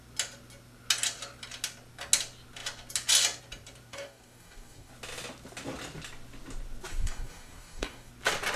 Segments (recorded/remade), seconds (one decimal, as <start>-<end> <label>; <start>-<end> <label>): 0.0-3.9 recorded; 3.9-4.9 remade; 4.9-6.9 recorded; 6.9-8.1 remade; 8.1-8.6 recorded